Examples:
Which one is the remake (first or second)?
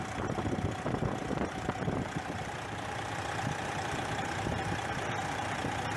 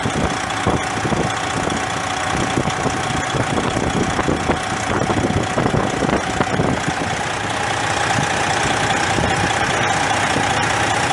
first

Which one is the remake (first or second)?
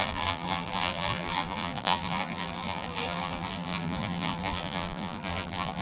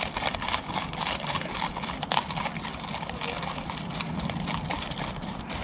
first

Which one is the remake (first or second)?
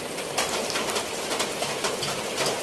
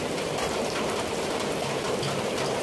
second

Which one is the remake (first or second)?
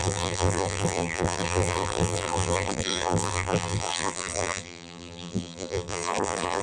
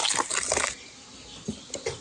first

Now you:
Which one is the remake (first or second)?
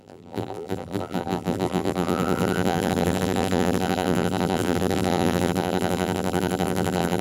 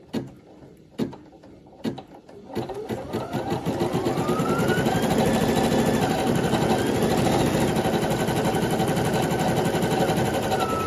first